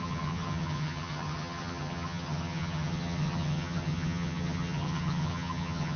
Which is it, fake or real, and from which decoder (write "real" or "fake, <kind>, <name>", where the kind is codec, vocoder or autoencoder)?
fake, vocoder, HiFi-GAN